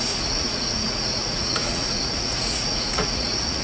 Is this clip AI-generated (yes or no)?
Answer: yes